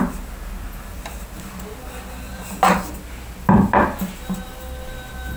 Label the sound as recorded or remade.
recorded